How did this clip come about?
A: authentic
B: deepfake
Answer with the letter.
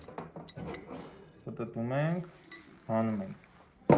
A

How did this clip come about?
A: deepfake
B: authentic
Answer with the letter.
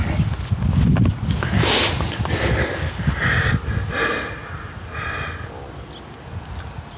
B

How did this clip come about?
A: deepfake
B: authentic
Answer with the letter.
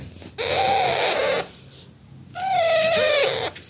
B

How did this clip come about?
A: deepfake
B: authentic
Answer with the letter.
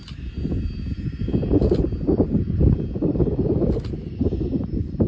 B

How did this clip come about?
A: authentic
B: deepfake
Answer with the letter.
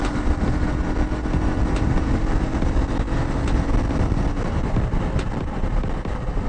A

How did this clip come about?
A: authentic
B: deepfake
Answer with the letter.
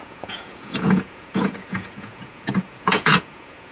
B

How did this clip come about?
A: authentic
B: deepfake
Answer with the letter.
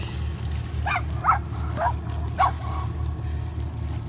A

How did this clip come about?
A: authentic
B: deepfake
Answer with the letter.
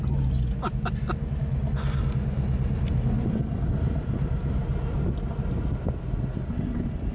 A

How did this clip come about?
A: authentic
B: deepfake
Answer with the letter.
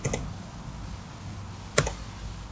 A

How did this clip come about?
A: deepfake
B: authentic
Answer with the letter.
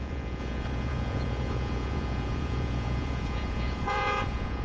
A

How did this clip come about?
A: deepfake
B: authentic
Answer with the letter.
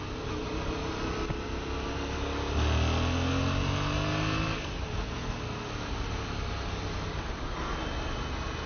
B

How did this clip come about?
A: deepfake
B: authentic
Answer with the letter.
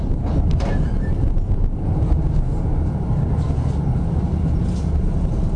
B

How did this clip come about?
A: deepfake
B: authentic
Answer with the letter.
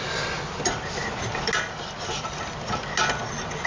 B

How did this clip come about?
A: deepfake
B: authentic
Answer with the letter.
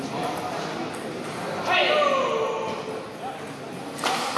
B